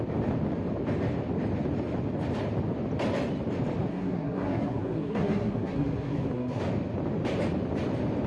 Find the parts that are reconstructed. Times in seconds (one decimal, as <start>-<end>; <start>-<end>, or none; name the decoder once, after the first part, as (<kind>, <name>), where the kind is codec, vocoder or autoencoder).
3.9-6.6 (codec, SNAC)